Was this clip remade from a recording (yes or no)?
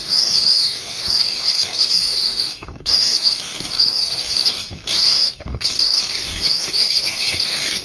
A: yes